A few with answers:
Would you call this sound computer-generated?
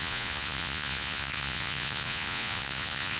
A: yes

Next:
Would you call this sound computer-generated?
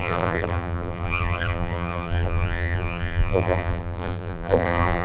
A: yes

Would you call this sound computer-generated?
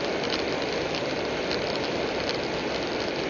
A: no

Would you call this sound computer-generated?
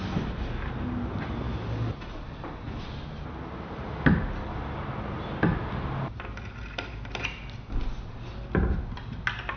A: no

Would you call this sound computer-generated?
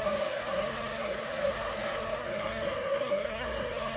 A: yes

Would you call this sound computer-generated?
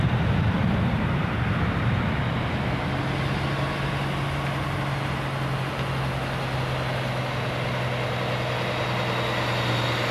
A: no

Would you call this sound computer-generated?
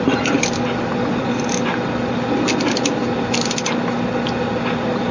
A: no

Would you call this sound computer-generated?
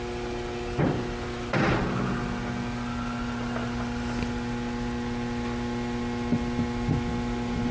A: no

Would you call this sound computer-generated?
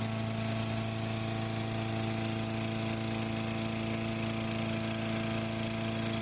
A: no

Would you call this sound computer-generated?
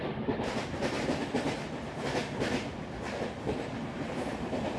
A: yes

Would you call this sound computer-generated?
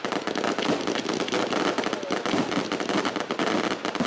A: no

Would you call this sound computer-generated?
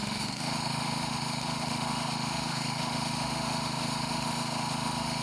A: yes